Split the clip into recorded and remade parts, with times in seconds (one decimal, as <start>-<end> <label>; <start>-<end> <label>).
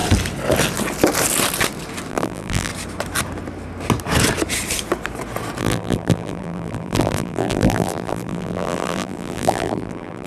0.0-2.1 recorded; 2.1-2.7 remade; 2.7-5.6 recorded; 5.6-10.3 remade